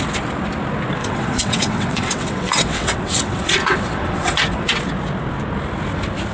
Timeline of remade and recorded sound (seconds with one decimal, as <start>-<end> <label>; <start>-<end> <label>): 0.0-1.0 recorded; 1.0-4.8 remade; 4.8-6.3 recorded